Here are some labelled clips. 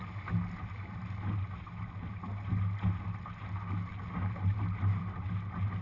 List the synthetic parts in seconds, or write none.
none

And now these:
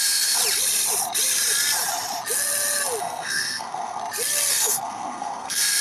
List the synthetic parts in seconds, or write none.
0.0-0.4; 3.0-4.0; 4.5-5.8

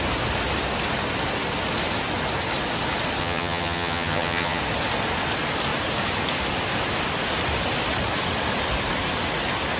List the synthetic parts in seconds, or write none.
3.2-4.6

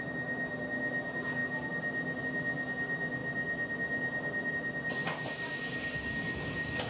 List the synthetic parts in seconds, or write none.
none

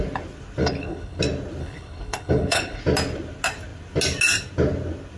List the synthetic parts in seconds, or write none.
0.6-1.2; 1.6-2.8

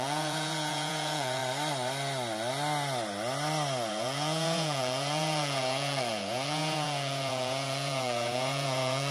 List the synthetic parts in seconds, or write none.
0.0-1.4; 3.9-9.1